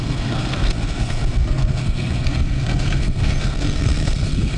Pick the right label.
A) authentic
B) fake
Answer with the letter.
B